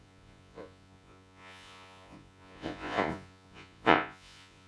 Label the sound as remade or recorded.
remade